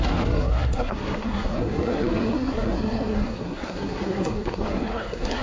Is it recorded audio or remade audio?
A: remade